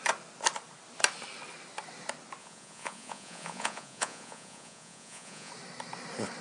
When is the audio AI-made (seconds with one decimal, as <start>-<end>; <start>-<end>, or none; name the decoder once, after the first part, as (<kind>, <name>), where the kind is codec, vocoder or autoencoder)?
2.4-5.5 (vocoder, Vocos)